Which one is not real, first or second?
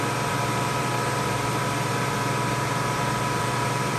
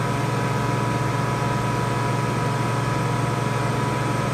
first